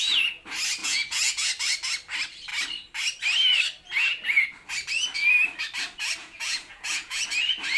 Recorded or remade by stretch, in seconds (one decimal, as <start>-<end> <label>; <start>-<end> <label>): 0.0-0.8 recorded; 0.8-1.5 remade; 1.5-6.2 recorded; 6.2-7.2 remade; 7.2-7.8 recorded